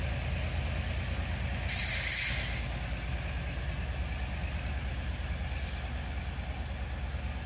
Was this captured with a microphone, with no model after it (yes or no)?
yes